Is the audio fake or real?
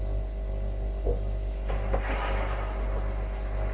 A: real